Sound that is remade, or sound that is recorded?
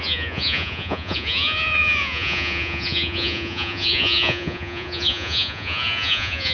remade